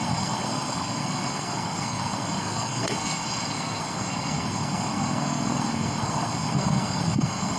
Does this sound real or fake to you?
fake